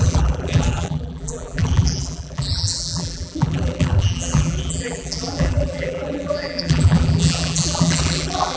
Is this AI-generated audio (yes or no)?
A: yes